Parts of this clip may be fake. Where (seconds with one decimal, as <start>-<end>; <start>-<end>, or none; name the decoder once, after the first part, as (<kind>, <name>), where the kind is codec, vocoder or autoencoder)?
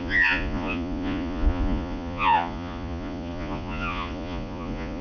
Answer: 0.0-5.0 (vocoder, Vocos)